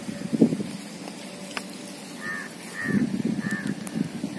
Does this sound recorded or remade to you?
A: recorded